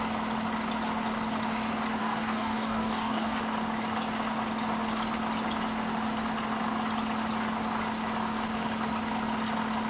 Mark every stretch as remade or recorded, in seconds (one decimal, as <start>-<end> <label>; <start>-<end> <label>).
0.0-2.0 recorded; 2.0-3.4 remade; 3.4-9.9 recorded